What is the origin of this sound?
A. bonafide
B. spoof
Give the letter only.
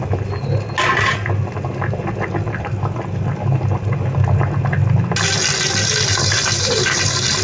A